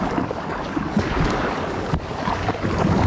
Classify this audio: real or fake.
fake